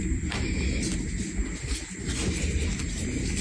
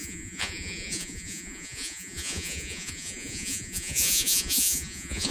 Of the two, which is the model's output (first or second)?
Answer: second